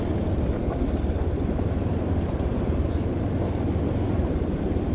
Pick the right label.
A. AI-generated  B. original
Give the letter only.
B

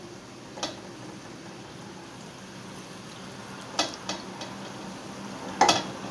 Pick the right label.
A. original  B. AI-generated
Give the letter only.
A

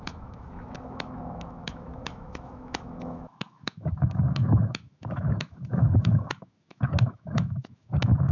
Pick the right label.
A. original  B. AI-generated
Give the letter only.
B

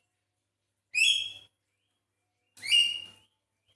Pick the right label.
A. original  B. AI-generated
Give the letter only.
A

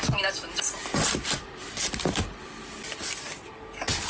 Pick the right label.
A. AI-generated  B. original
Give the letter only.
B